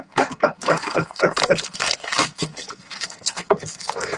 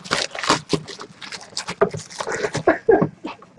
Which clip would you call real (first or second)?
second